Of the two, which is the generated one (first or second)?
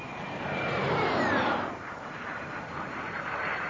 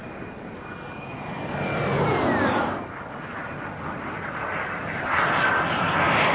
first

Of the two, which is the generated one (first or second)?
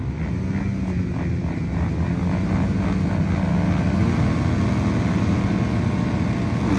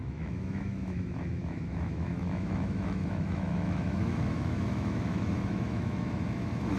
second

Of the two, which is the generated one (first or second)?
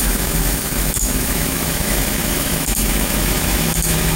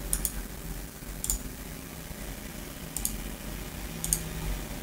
first